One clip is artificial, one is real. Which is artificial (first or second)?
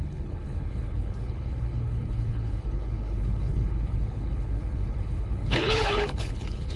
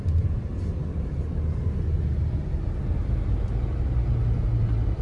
first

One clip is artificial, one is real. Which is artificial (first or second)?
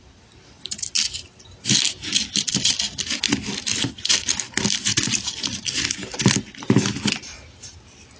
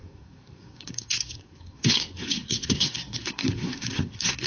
second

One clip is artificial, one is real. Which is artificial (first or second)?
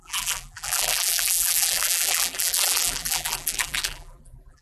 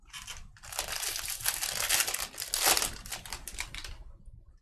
first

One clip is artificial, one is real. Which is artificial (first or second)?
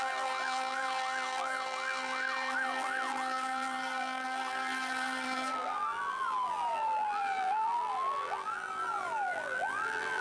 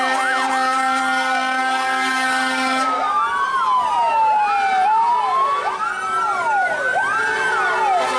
first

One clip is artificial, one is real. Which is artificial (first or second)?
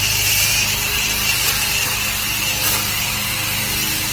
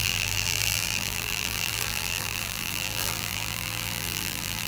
second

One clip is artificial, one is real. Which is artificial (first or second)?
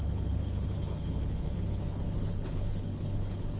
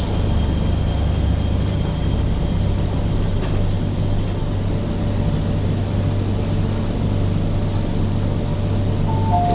first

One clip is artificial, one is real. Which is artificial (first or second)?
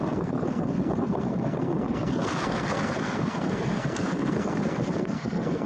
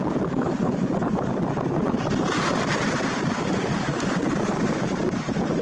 first